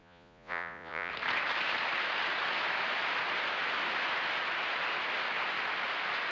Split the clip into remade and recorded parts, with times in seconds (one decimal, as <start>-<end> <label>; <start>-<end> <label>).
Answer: 0.0-1.1 remade; 1.1-6.3 recorded